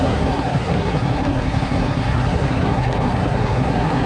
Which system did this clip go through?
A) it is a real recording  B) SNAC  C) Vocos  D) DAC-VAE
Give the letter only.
B